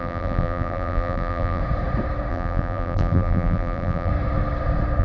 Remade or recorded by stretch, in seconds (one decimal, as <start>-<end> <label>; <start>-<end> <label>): 0.0-1.6 remade; 1.6-2.3 recorded; 2.3-4.1 remade; 4.1-5.0 recorded